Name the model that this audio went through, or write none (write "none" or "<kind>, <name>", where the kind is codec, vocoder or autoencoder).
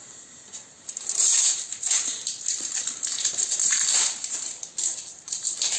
vocoder, BigVGAN v2